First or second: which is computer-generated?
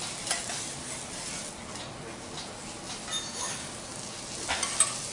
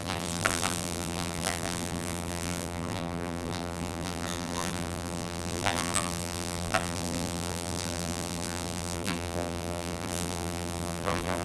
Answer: second